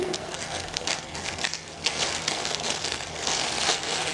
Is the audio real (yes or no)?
no